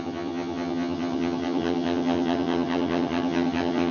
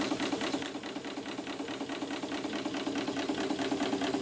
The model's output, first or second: first